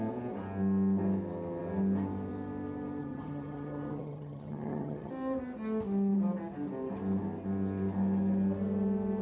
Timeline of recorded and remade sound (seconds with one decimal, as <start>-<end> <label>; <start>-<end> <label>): 0.0-3.0 recorded; 3.0-5.1 remade; 5.1-9.2 recorded